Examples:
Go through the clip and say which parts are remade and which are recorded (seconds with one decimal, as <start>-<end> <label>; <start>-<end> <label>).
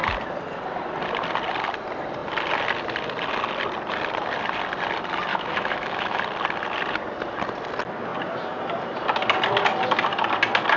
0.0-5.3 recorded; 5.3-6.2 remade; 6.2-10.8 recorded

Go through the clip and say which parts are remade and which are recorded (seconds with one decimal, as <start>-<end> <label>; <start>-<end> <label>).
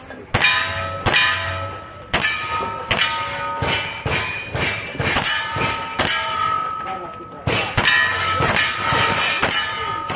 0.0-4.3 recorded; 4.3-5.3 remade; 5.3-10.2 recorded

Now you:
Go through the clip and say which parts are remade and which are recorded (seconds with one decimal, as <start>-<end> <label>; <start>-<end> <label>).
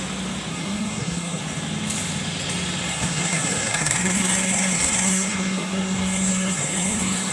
0.0-0.5 recorded; 0.5-1.4 remade; 1.4-2.9 recorded; 2.9-7.3 remade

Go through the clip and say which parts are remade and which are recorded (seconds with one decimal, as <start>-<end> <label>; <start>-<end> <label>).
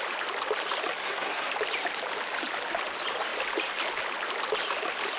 0.0-1.0 recorded; 1.0-1.5 remade; 1.5-5.2 recorded